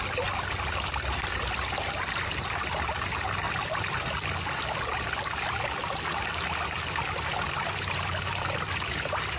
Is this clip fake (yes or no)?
no